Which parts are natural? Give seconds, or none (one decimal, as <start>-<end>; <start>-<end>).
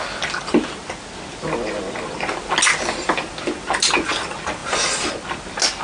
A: 0.0-5.8